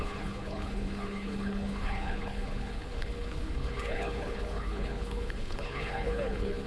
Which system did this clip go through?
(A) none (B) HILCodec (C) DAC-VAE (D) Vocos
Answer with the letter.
B